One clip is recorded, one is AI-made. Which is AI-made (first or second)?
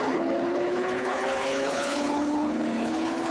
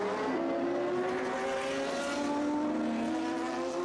first